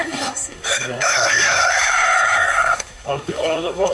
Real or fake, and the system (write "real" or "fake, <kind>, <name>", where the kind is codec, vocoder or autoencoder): fake, codec, SNAC